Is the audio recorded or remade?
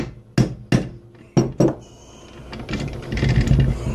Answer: recorded